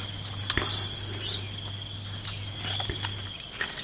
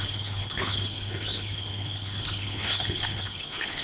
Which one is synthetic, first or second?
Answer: second